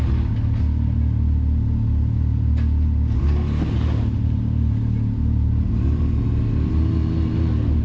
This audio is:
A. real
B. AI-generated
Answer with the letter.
A